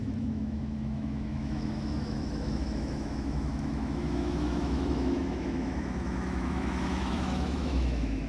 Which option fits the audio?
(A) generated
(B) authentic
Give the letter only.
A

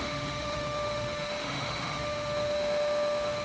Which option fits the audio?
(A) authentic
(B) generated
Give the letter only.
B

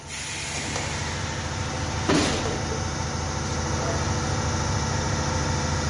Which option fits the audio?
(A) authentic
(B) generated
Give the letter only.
A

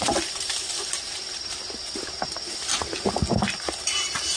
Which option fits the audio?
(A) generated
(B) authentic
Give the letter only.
B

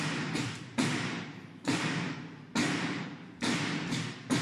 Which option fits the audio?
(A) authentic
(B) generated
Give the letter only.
A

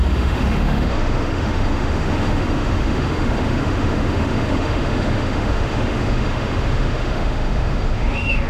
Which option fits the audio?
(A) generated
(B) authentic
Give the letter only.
A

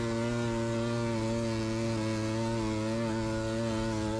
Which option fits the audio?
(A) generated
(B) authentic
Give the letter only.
B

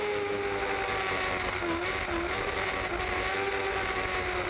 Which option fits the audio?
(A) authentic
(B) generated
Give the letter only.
A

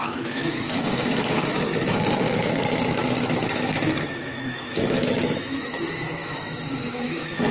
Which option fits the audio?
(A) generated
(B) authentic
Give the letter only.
A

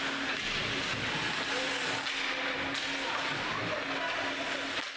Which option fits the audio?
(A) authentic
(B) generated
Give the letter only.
A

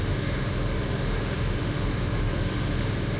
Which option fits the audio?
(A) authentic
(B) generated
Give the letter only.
B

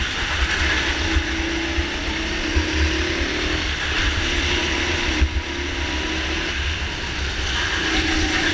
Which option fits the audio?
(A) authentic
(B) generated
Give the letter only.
A